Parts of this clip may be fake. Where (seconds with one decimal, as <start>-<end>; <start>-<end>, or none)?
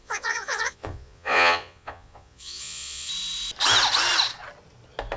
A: 0.0-3.1